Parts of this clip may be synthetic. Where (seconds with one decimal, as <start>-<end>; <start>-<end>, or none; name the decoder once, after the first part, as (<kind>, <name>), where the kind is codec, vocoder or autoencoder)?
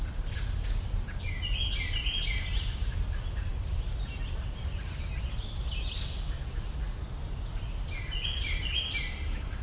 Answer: none